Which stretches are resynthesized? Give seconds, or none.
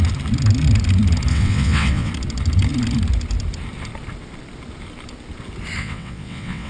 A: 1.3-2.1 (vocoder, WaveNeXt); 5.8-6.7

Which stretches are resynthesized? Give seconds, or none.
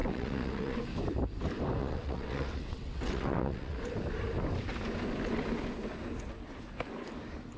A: 0.0-0.8 (vocoder, WaveNeXt); 1.8-3.9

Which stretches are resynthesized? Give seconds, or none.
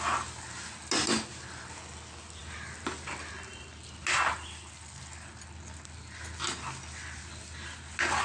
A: none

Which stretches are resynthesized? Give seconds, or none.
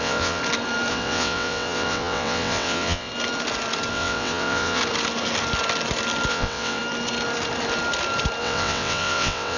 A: 0.0-0.4 (vocoder, WaveNeXt); 0.9-3.1; 3.9-4.8; 6.3-6.8; 8.4-9.6